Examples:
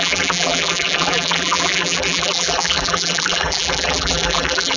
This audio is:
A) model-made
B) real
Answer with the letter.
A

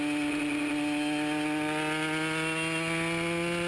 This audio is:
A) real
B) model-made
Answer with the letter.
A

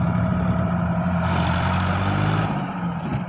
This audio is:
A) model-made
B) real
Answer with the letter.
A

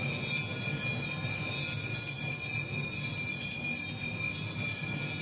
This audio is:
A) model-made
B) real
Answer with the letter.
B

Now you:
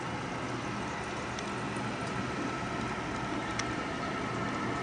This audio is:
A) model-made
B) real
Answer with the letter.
B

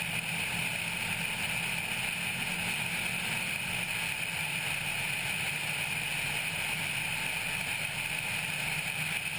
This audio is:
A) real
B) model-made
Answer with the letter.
A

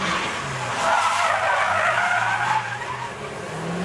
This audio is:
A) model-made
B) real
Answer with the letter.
B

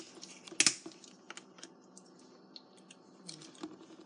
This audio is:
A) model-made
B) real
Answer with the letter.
B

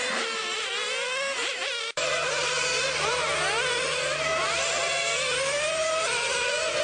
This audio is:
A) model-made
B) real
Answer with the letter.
A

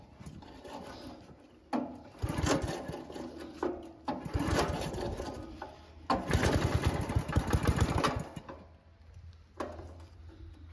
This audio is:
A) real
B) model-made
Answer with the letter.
A